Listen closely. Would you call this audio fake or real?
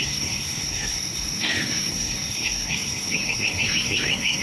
fake